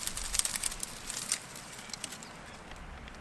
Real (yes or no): yes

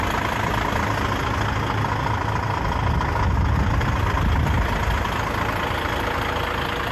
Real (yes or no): yes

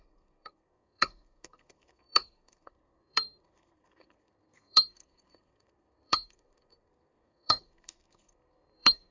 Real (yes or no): no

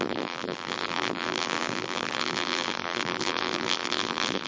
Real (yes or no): no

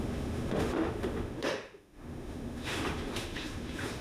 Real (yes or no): no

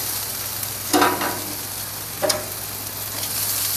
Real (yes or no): yes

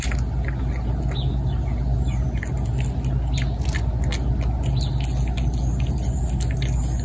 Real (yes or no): yes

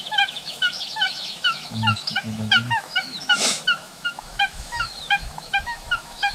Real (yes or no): no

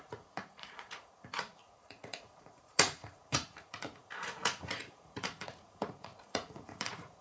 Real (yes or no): no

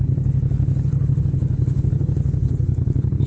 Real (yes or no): no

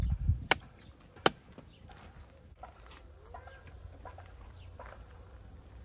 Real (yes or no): yes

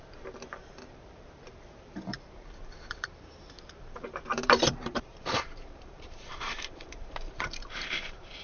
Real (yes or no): no